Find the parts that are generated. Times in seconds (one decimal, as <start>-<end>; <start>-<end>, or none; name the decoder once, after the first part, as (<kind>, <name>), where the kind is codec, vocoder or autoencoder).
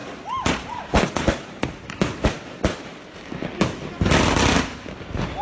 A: 0.0-3.2 (vocoder, BigVGAN v2)